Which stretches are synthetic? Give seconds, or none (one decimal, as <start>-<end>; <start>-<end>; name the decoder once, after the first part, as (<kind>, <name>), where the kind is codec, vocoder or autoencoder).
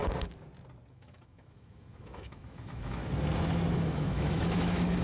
0.9-3.0 (autoencoder, DAC-VAE); 3.8-5.0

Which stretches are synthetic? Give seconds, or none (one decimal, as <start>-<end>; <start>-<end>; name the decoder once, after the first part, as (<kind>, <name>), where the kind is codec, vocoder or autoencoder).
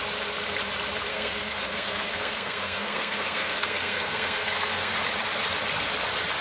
1.1-4.9 (codec, SNAC)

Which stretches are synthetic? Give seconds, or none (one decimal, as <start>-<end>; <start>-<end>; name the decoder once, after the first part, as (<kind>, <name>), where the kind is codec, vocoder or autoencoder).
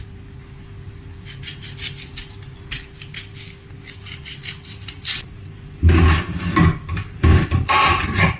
4.6-5.5 (vocoder, BigVGAN v2); 7.3-8.4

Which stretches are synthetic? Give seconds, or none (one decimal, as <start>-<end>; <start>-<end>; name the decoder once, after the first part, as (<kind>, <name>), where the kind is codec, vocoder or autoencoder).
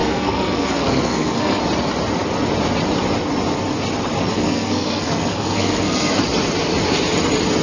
0.0-1.6 (codec, SNAC); 4.3-6.1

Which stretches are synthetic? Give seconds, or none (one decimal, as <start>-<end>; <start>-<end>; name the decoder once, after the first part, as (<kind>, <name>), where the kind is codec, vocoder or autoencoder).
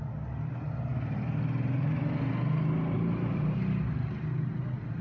none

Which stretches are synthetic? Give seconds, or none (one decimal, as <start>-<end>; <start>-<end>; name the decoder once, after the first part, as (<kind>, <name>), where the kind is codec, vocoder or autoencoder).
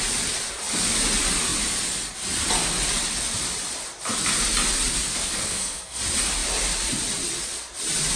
5.1-6.0 (codec, SNAC)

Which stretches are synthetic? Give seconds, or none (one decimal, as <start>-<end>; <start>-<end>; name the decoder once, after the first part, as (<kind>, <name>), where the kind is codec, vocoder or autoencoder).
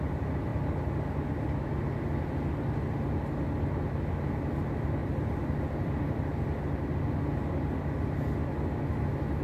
5.0-6.0 (vocoder, BigVGAN v2)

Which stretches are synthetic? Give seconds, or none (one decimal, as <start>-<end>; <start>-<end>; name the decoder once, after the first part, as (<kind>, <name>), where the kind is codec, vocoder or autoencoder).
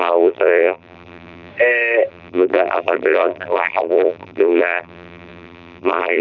0.0-1.5 (vocoder, BigVGAN v2); 2.1-6.2